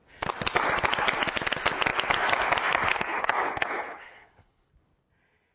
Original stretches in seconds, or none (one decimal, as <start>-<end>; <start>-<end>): 0.0-2.9; 4.7-5.5